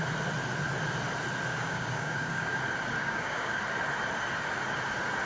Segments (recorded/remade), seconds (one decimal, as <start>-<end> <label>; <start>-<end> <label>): 0.0-1.5 recorded; 1.5-2.6 remade; 2.6-3.0 recorded; 3.0-3.6 remade; 3.6-5.3 recorded